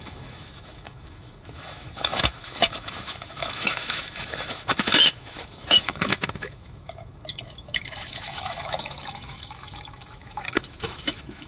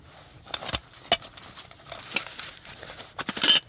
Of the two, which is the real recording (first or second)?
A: second